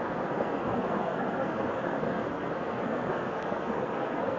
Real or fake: fake